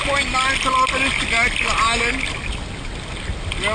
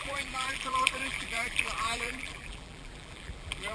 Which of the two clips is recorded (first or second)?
first